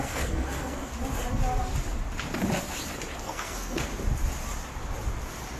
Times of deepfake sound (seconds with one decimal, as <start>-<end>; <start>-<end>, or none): 0.0-0.9; 3.2-3.9